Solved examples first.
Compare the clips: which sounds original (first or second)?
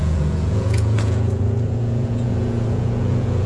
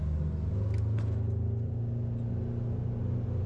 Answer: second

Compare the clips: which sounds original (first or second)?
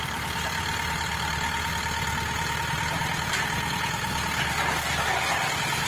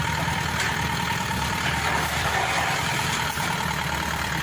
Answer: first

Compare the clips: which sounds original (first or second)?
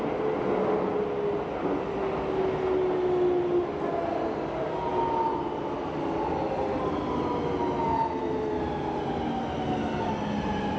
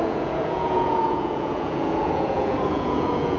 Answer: first